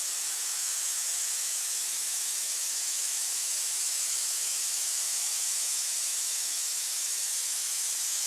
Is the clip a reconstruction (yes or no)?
yes